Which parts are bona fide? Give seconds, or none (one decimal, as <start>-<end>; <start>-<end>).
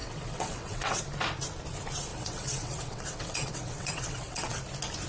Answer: 1.0-2.1; 4.6-5.1